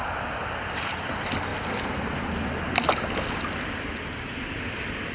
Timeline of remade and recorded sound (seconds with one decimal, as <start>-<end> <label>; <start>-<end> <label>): 0.0-5.1 recorded